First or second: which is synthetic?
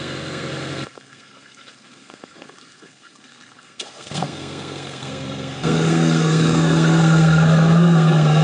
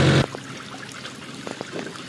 first